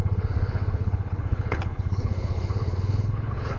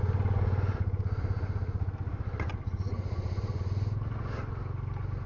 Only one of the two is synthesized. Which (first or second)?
first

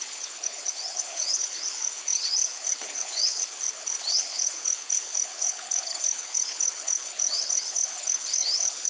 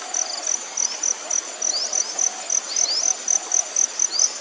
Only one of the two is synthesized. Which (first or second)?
first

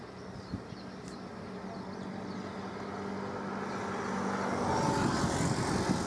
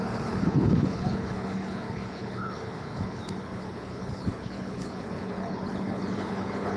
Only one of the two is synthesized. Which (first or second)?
second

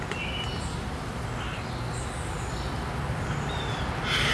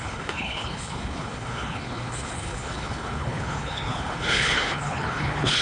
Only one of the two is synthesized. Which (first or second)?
second